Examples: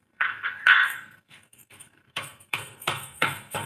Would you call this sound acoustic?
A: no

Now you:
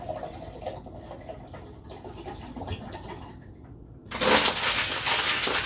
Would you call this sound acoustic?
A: yes